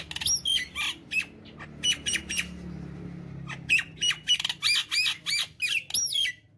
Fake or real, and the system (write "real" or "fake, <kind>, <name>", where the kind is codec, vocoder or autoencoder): real